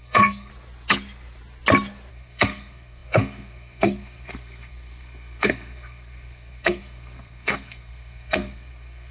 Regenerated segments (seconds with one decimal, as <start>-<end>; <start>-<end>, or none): 0.0-0.5; 2.1-9.1